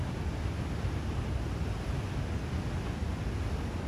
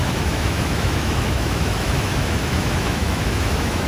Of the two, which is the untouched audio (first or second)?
first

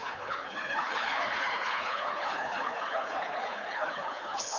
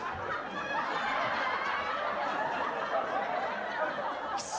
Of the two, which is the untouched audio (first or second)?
second